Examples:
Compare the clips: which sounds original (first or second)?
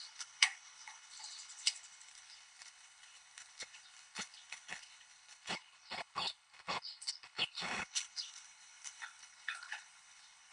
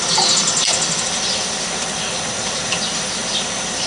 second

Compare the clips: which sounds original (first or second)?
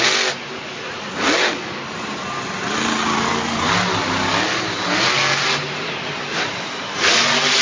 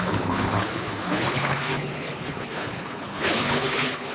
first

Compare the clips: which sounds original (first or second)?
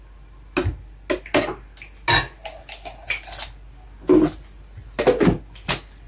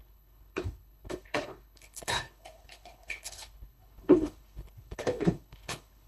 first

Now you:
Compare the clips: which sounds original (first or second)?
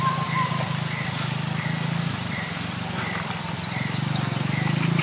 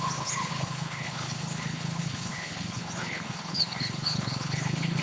first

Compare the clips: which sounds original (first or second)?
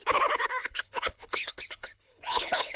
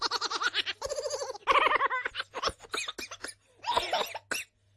second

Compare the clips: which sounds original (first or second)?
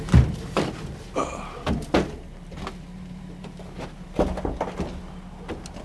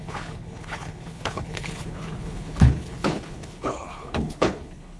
first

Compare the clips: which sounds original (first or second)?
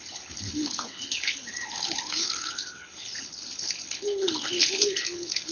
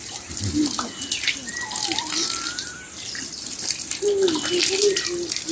second